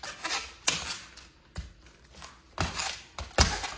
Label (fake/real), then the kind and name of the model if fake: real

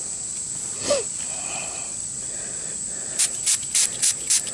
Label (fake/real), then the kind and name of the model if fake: real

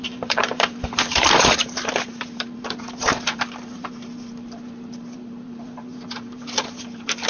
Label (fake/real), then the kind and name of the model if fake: fake, vocoder, BigVGAN v2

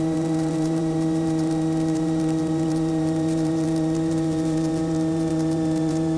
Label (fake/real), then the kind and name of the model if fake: fake, vocoder, BigVGAN v2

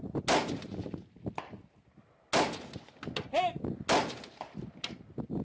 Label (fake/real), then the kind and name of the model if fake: real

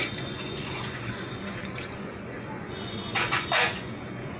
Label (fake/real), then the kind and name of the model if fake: fake, vocoder, Vocos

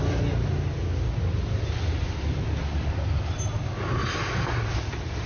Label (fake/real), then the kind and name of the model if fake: real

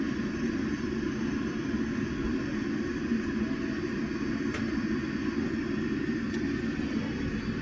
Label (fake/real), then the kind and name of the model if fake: real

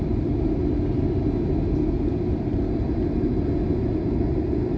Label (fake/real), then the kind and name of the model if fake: real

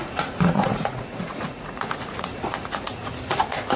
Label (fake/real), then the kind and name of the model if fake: fake, vocoder, Vocos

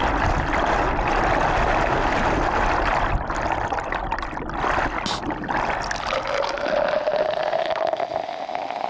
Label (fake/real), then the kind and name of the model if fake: real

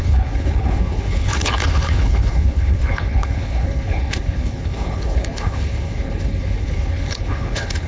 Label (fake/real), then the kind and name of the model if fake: fake, codec, HILCodec